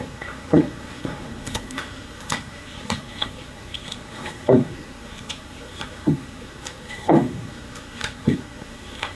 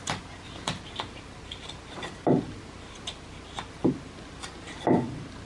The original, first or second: second